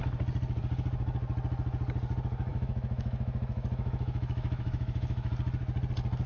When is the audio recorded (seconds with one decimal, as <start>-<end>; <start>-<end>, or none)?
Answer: 0.0-2.5; 5.3-6.3